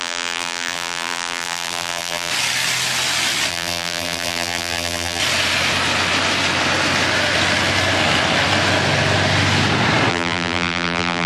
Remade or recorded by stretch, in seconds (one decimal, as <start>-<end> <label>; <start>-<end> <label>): 0.0-2.3 remade; 2.3-3.5 recorded; 3.5-5.2 remade; 5.2-10.1 recorded; 10.1-11.3 remade